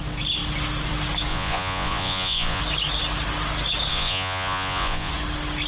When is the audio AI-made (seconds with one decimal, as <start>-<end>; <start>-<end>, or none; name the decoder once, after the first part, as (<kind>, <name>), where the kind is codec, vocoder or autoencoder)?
1.3-2.6 (vocoder, Vocos); 3.9-5.1